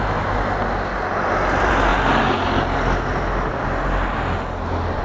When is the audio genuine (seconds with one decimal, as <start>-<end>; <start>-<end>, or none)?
0.0-5.0

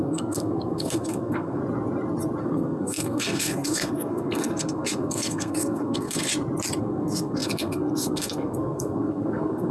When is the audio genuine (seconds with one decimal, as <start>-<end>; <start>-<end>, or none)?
1.6-2.4; 6.3-6.8

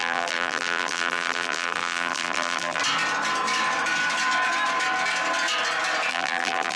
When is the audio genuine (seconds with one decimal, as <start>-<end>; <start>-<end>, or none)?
2.8-6.1

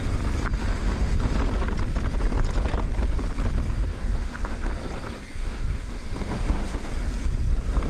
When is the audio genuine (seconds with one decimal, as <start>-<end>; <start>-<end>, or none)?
0.0-0.8; 1.3-3.9; 4.7-5.4; 6.9-7.9